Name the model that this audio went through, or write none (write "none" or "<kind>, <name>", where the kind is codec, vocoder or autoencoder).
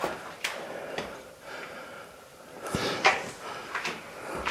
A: vocoder, BigVGAN v2